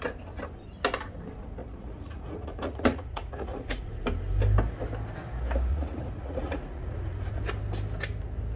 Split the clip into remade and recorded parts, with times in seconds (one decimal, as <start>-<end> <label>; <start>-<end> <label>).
0.0-1.6 recorded; 1.6-3.9 remade; 3.9-5.7 recorded; 5.7-7.4 remade; 7.4-8.6 recorded